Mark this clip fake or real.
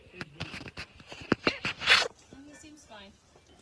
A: real